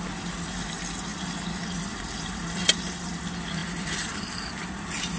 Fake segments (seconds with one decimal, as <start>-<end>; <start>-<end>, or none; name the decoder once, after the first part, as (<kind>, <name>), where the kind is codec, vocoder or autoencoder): none